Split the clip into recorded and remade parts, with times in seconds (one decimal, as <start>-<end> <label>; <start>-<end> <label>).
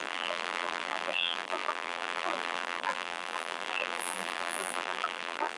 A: 0.0-5.6 remade